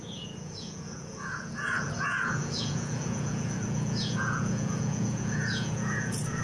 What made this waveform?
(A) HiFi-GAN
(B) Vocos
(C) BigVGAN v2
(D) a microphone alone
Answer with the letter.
B